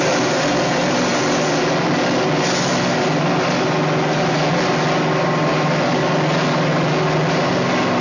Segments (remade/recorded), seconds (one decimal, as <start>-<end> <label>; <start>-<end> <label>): 0.0-8.0 recorded